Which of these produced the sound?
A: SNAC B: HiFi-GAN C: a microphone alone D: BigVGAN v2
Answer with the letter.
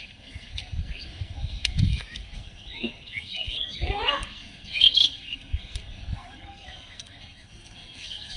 A